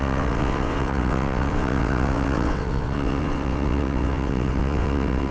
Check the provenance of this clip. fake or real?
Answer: fake